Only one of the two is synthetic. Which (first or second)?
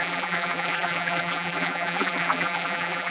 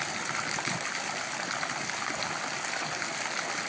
first